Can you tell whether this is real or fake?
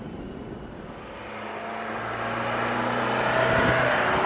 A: real